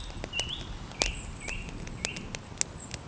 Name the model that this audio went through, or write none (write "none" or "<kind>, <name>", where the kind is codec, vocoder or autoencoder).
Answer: none